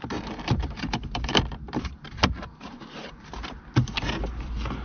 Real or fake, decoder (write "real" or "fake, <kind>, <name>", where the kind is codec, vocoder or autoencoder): fake, vocoder, BigVGAN v2